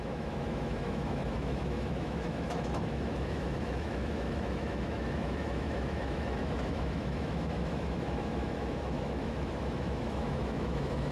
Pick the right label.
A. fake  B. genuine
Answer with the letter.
A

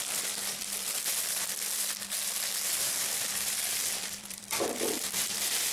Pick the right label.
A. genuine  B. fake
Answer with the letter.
B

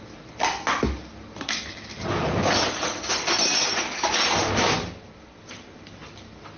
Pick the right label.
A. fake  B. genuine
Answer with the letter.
B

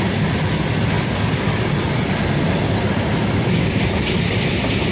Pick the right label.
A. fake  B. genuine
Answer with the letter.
B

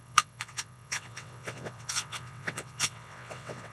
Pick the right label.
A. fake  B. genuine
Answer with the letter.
A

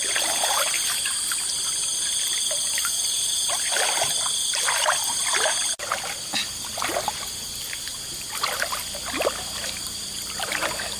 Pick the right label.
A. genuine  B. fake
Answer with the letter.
A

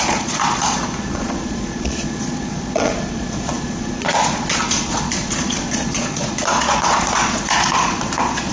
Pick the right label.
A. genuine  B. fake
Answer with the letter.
B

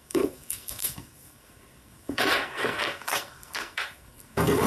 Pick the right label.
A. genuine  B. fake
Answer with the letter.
B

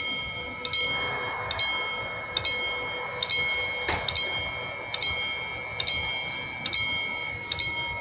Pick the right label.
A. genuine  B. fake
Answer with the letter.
A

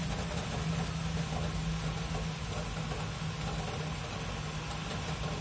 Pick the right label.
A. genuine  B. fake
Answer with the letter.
A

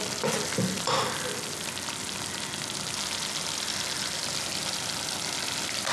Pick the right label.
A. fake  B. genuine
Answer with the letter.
B